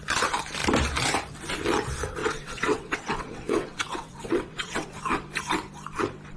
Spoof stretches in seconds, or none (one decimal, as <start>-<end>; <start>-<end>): 2.2-4.9